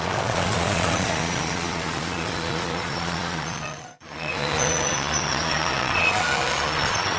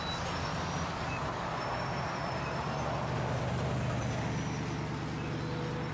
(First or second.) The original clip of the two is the second